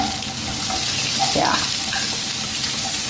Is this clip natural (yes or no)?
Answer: no